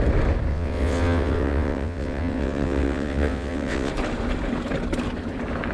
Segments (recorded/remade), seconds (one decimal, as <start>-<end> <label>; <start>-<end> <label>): 0.0-0.5 recorded; 0.5-3.9 remade; 3.9-5.7 recorded